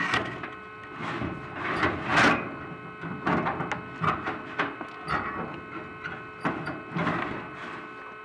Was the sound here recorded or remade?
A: recorded